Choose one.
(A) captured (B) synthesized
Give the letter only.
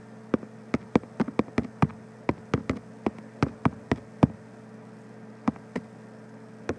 A